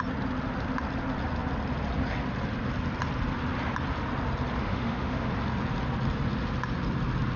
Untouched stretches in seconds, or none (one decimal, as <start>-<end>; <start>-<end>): 0.0-4.6; 5.3-7.4